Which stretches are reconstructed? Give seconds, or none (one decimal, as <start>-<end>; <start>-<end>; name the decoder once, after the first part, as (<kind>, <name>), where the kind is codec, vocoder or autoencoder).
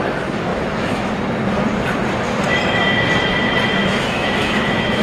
0.5-1.1 (autoencoder, DAC-VAE); 3.8-5.0